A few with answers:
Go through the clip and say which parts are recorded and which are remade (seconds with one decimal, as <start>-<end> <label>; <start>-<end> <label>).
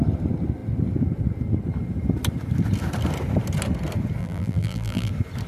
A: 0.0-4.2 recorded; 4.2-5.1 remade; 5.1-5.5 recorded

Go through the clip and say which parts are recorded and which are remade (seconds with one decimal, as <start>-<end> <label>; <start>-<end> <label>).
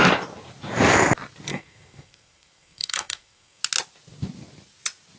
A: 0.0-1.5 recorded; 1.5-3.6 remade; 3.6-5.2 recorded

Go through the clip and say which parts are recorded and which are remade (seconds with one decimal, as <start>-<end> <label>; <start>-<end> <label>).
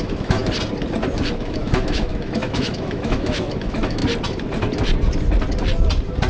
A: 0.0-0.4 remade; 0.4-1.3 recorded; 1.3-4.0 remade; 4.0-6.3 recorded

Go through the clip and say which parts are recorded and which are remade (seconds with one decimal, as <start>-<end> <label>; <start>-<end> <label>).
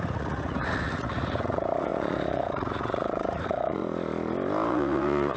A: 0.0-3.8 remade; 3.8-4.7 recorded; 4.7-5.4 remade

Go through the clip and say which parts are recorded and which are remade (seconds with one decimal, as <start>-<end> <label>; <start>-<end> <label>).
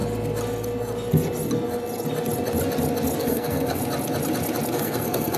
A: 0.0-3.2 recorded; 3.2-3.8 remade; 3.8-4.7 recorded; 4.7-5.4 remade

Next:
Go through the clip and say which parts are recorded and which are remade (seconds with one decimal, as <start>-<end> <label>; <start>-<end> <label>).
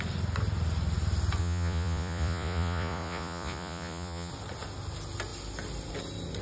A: 0.0-1.4 recorded; 1.4-4.3 remade; 4.3-6.4 recorded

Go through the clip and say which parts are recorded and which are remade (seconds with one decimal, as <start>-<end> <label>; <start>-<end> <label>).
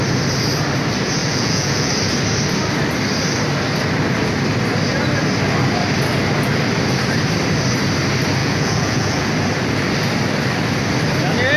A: 0.0-1.2 recorded; 1.2-1.9 remade; 1.9-8.4 recorded; 8.4-9.3 remade; 9.3-11.6 recorded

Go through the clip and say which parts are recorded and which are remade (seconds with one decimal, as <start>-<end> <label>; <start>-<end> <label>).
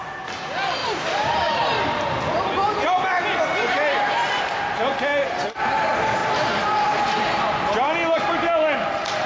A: 0.0-0.8 recorded; 0.8-2.1 remade; 2.1-9.3 recorded